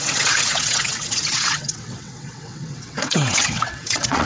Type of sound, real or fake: fake